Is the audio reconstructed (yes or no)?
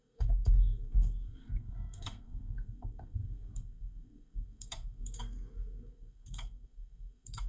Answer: yes